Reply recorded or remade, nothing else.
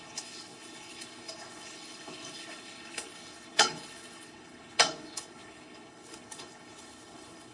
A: remade